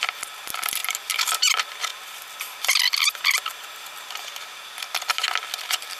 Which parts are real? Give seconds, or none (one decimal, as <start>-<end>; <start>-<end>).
0.0-6.0